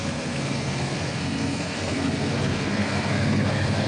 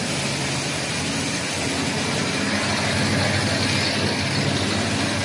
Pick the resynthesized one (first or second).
first